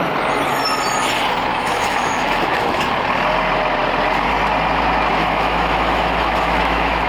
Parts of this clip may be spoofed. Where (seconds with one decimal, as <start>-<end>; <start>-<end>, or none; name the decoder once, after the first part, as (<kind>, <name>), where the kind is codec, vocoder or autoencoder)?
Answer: 1.5-2.8 (autoencoder, DAC-VAE); 5.2-7.1